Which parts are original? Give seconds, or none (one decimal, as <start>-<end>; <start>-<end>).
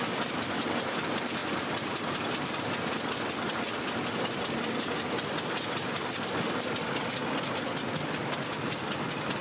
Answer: 0.0-9.4